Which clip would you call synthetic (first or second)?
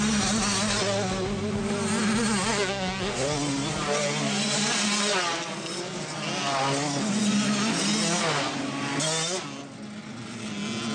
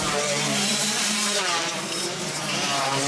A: second